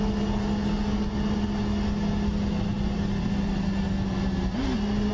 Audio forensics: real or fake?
real